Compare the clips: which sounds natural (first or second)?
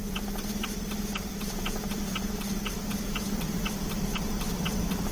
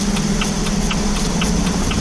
second